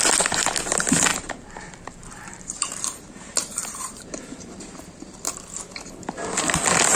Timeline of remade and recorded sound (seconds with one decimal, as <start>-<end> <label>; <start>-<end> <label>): 0.0-1.1 recorded; 1.1-5.3 remade; 5.3-7.0 recorded